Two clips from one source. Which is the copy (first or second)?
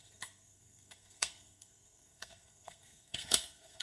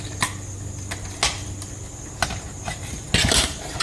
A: first